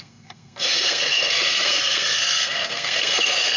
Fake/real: fake